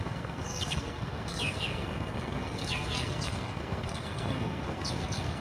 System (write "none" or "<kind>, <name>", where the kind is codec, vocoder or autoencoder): codec, SNAC